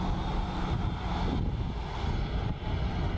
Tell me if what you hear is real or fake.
real